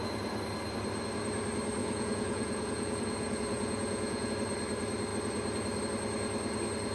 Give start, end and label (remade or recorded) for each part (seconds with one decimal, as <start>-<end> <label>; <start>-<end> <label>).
0.0-1.8 recorded; 1.8-4.3 remade; 4.3-6.9 recorded